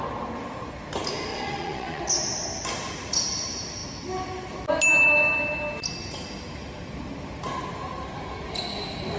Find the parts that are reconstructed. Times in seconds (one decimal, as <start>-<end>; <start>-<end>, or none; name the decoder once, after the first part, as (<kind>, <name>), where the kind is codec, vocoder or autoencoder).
1.3-2.0 (vocoder, Vocos)